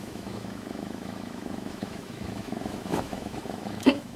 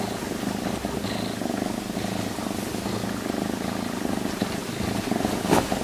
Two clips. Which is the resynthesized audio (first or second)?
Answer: first